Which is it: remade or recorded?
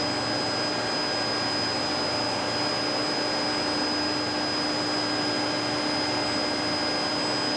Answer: recorded